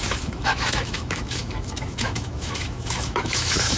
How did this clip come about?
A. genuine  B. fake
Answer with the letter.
B